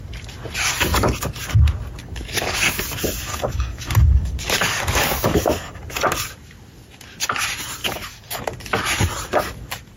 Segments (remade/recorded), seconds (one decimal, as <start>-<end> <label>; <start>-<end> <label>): 0.0-2.0 recorded; 2.0-2.8 remade; 2.8-3.3 recorded; 3.3-5.8 remade; 5.8-7.8 recorded; 7.8-8.4 remade; 8.4-10.0 recorded